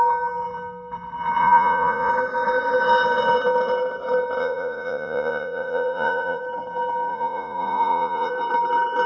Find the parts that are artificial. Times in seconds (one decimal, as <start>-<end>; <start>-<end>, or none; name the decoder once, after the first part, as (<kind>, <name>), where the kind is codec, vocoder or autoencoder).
1.4-2.1 (vocoder, Vocos); 4.4-6.4; 7.1-8.3